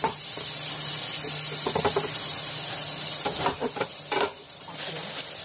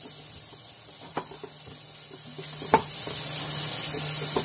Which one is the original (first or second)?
second